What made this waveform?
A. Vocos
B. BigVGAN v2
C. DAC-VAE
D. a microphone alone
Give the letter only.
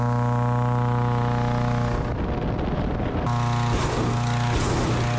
D